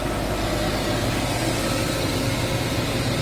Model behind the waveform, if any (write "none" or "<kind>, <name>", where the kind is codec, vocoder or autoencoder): none